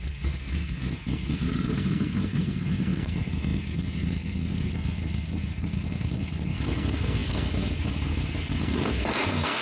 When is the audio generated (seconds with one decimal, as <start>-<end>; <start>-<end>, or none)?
0.0-9.6